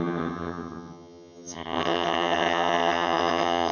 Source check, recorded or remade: remade